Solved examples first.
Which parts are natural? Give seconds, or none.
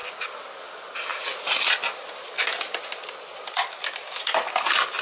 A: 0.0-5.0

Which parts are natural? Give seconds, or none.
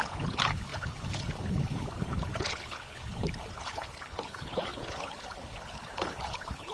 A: none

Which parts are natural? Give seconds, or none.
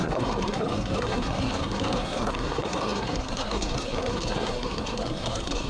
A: none